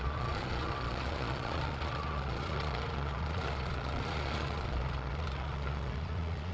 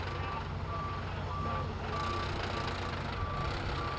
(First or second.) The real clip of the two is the second